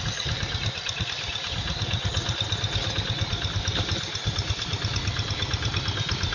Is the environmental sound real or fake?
real